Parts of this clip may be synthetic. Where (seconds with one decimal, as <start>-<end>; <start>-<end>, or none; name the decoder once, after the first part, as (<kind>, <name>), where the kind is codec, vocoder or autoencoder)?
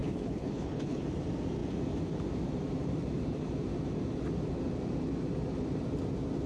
0.0-1.0 (codec, HILCodec)